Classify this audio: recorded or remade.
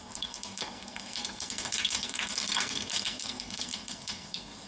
remade